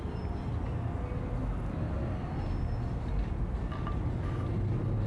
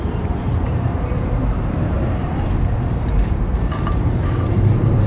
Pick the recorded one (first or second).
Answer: first